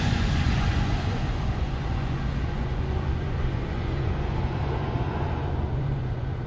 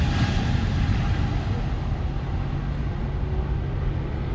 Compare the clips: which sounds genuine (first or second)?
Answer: second